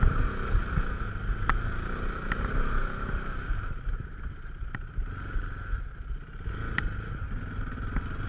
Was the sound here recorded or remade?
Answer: recorded